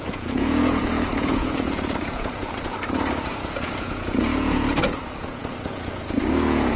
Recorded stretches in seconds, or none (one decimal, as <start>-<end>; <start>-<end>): none